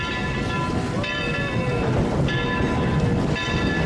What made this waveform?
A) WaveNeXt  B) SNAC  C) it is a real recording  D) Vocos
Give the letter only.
C